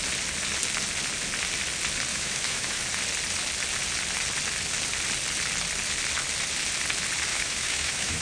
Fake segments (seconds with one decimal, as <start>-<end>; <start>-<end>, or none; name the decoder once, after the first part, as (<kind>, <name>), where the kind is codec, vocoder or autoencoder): 2.1-2.8 (autoencoder, DAC-VAE); 7.3-8.2